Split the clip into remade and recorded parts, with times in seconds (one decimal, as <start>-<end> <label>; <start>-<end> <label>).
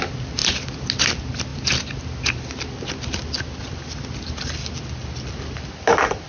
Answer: 0.0-6.3 recorded